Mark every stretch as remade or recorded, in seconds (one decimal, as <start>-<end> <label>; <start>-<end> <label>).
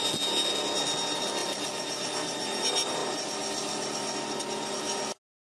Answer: 0.0-5.6 recorded